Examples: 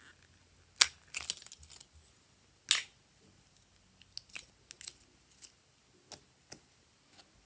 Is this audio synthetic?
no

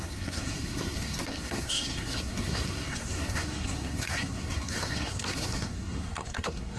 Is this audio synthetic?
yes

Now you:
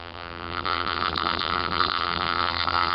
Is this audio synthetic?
yes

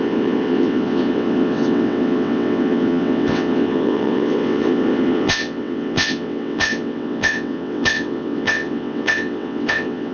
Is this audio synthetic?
yes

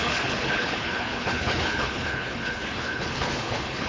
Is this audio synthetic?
yes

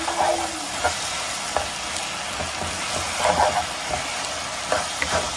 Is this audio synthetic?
no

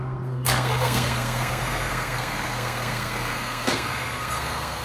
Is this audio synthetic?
yes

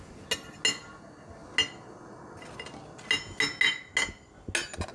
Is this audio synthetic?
no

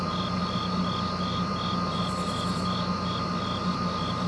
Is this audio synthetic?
no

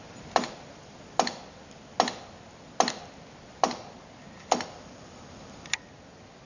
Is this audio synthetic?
no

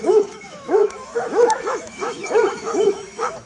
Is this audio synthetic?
yes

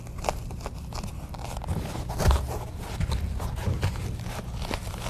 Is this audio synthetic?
no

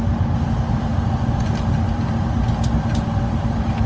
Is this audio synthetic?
no